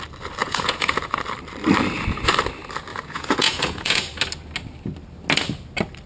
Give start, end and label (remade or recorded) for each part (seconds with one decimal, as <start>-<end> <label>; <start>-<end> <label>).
0.0-0.4 recorded; 0.4-1.2 remade; 1.2-2.9 recorded; 2.9-4.0 remade; 4.0-6.1 recorded